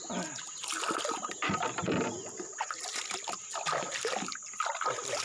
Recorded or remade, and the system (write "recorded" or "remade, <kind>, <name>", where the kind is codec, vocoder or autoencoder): recorded